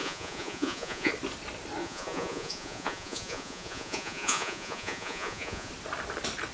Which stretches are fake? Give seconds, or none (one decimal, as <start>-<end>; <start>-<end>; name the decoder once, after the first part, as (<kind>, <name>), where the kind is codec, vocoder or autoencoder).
0.0-1.1 (vocoder, Vocos); 1.8-5.7